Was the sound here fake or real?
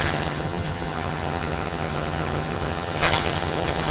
fake